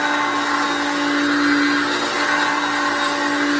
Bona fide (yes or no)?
yes